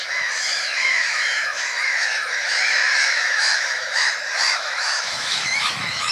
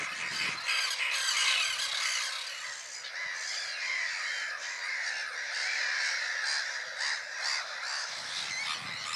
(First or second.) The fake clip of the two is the first